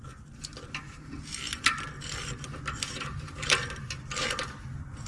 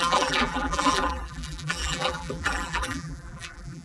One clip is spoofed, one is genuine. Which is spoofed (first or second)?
second